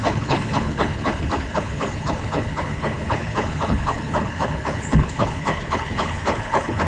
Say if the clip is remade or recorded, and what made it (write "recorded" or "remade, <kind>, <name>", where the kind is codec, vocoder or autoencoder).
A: remade, codec, HILCodec